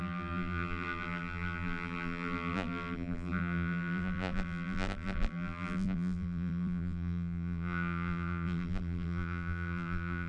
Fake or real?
fake